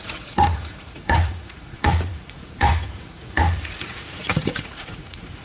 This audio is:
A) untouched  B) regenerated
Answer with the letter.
B